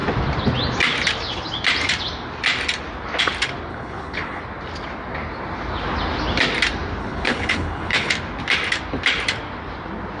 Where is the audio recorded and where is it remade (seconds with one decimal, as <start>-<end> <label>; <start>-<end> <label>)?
0.0-3.7 recorded; 3.7-4.4 remade; 4.4-7.0 recorded; 7.0-8.1 remade; 8.1-10.2 recorded